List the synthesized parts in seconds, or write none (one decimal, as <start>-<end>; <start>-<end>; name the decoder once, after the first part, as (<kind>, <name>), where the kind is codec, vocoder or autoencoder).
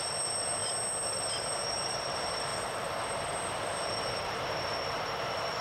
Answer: 0.0-0.6 (vocoder, BigVGAN v2); 1.3-2.5; 3.0-5.6